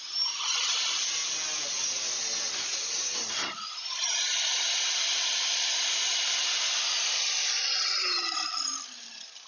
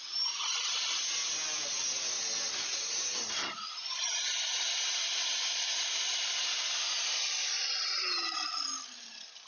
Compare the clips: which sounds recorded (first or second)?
second